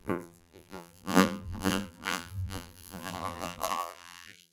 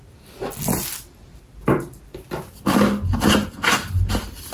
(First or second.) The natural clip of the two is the second